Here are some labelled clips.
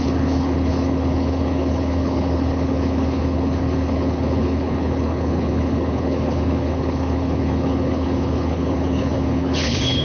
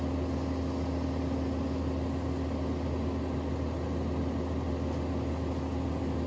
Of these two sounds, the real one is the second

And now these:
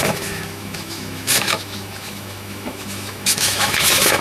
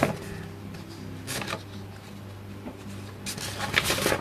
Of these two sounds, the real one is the second